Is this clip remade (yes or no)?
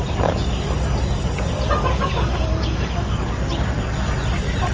no